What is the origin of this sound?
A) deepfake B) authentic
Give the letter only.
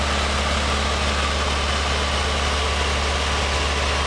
B